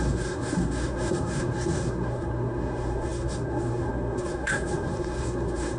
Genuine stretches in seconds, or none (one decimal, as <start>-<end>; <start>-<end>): none